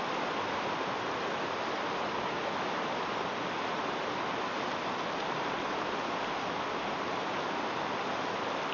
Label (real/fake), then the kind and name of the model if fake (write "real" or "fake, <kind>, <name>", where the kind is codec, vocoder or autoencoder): real